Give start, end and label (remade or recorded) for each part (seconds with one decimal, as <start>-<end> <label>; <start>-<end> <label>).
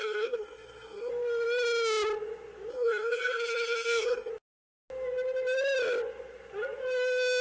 0.0-1.1 remade; 1.1-2.7 recorded; 2.7-4.3 remade; 4.3-7.4 recorded